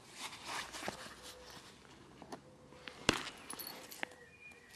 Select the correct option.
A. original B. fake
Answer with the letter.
A